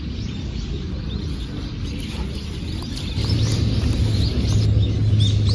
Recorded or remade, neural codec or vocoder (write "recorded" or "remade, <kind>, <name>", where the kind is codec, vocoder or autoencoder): recorded